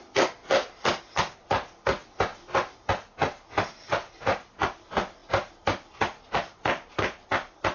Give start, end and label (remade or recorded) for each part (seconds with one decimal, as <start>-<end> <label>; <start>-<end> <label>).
0.0-7.7 recorded